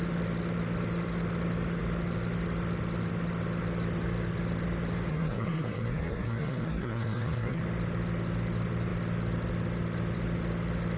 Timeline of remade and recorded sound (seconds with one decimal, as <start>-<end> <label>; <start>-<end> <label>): 0.0-5.1 recorded; 5.1-7.6 remade; 7.6-11.0 recorded